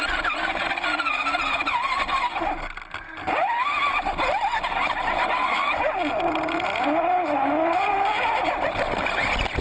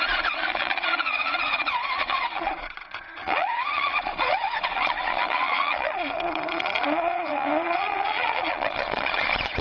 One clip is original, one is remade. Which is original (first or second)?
first